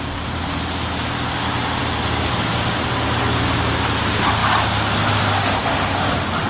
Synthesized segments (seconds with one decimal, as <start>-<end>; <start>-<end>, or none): none